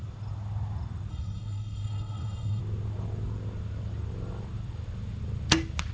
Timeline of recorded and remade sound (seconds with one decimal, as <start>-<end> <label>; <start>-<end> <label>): 0.0-1.1 recorded; 1.1-2.6 remade; 2.6-5.9 recorded